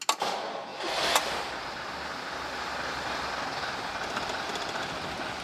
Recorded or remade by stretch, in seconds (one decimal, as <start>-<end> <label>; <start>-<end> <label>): 0.0-5.4 recorded